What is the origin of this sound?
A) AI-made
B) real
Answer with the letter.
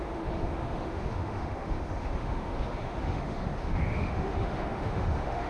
A